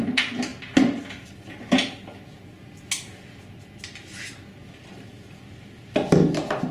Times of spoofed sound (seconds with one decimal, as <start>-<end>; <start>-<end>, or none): none